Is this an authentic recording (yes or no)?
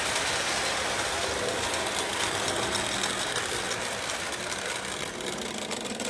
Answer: yes